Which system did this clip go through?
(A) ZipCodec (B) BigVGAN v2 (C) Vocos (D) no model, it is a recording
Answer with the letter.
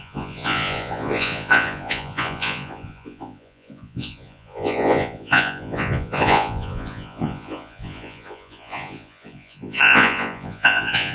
C